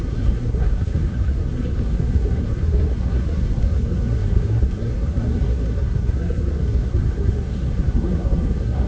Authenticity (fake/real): fake